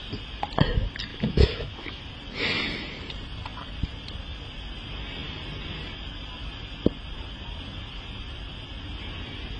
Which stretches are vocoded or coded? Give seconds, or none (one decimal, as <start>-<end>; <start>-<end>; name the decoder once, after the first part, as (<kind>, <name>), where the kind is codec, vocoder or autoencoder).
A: 1.1-2.0 (autoencoder, DAC-VAE)